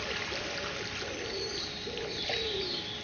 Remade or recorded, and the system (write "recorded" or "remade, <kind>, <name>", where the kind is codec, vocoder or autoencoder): recorded